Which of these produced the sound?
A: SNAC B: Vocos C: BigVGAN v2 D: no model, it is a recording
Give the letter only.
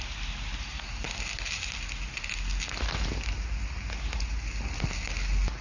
D